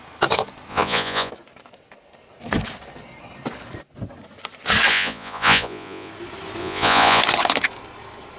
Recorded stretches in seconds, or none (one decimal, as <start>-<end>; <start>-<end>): 0.0-0.7; 1.3-4.9; 6.1-6.6; 7.2-8.4